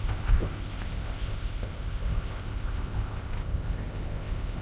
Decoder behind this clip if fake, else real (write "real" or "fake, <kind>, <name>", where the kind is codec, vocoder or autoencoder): fake, codec, ZipCodec